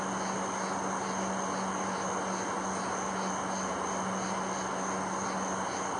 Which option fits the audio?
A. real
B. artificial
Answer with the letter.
A